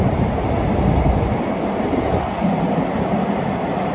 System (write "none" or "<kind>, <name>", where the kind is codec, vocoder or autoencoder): none